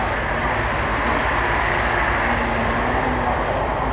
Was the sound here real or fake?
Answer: real